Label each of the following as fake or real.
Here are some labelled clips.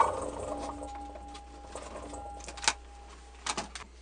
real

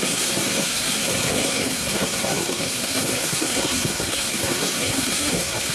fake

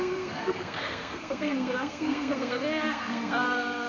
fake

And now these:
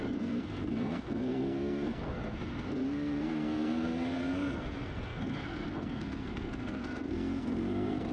fake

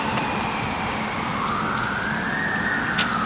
real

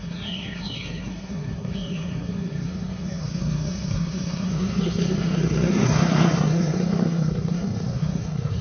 fake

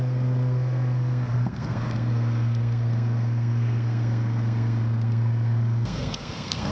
fake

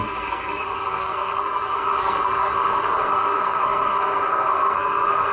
fake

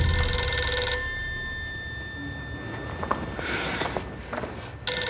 real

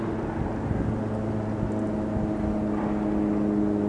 real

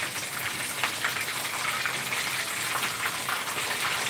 real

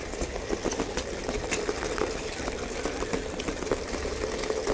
real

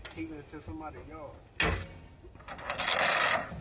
real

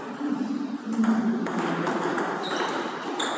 real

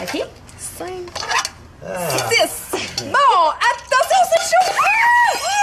real